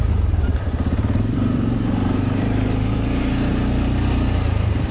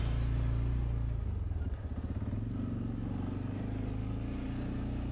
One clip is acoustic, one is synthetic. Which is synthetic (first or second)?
first